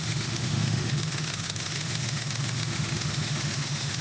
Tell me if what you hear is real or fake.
fake